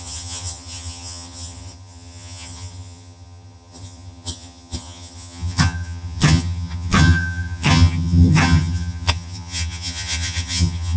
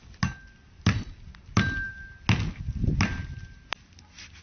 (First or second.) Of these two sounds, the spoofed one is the first